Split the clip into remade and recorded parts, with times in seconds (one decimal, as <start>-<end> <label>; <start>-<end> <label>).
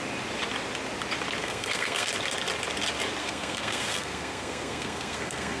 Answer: 0.0-1.4 recorded; 1.4-2.1 remade; 2.1-3.2 recorded; 3.2-5.6 remade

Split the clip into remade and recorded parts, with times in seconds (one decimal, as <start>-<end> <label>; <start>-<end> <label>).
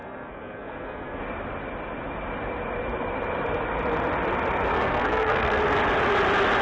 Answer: 0.0-1.2 remade; 1.2-4.7 recorded; 4.7-5.6 remade; 5.6-6.6 recorded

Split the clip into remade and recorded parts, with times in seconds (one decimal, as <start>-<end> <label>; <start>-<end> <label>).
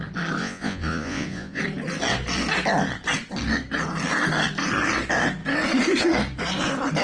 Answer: 0.0-0.4 recorded; 0.4-1.6 remade; 1.6-7.0 recorded